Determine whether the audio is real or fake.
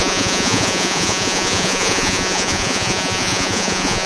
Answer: fake